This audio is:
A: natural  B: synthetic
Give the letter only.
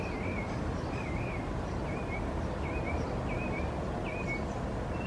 A